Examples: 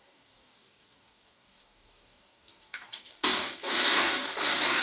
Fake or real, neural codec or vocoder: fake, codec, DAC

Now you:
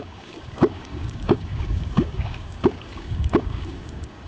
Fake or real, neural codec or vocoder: fake, codec, DAC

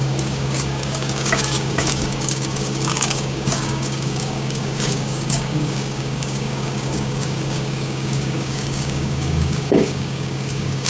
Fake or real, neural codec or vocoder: fake, codec, DAC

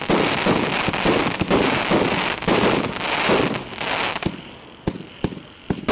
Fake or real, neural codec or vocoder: real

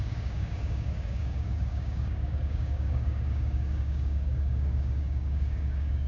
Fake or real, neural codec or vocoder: fake, codec, DAC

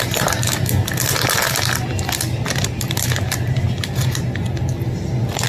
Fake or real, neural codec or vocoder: real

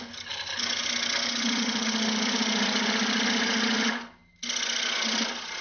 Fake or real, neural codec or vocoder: real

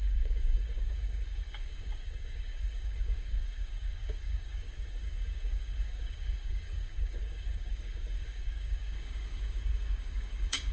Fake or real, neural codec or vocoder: fake, codec, DAC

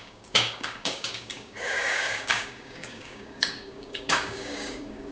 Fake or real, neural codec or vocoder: fake, codec, DAC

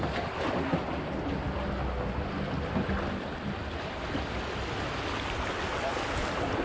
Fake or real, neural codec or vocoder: real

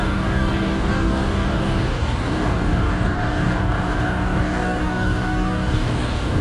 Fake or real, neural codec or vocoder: fake, codec, DAC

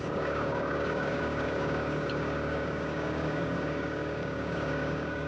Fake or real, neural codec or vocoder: fake, codec, DAC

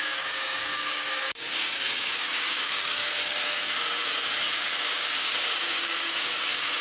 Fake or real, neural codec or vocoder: fake, codec, DAC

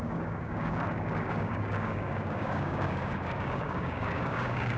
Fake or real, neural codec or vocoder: fake, codec, DAC